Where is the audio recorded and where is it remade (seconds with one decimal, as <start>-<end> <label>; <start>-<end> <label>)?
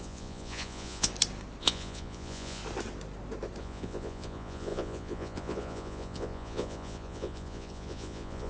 0.0-1.1 remade; 1.1-1.6 recorded; 1.6-2.6 remade; 2.6-3.6 recorded; 3.6-8.5 remade